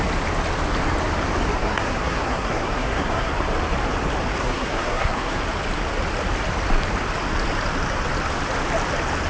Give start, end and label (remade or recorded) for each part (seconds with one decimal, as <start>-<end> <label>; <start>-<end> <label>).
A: 0.0-1.6 recorded; 1.6-3.3 remade; 3.3-4.4 recorded; 4.4-5.4 remade; 5.4-9.3 recorded